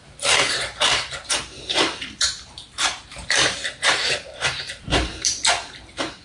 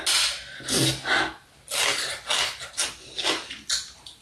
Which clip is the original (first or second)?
second